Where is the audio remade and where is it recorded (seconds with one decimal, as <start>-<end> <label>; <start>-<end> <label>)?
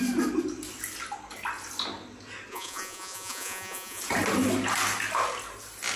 0.0-2.5 recorded; 2.5-4.0 remade; 4.0-6.0 recorded